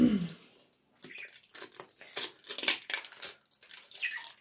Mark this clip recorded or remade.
recorded